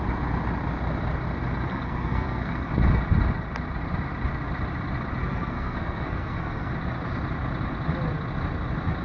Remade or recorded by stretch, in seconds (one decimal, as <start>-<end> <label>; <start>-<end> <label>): 0.0-1.7 recorded; 1.7-2.7 remade; 2.7-5.2 recorded; 5.2-6.7 remade; 6.7-9.0 recorded